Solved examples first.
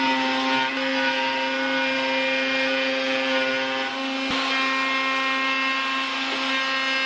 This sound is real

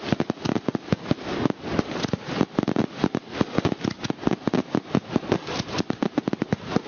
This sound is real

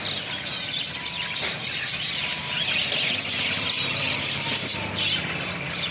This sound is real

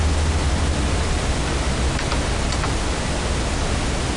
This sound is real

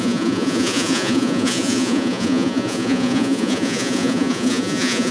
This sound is fake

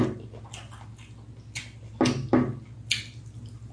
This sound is real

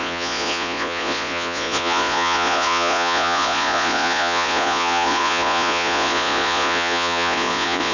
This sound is fake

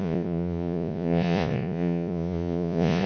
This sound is fake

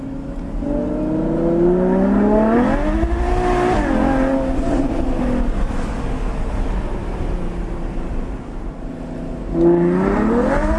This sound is real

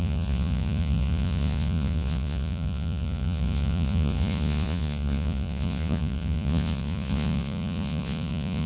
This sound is fake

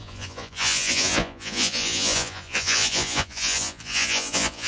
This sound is fake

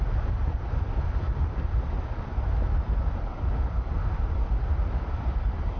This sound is real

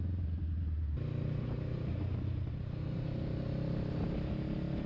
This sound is real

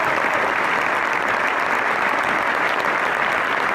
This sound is real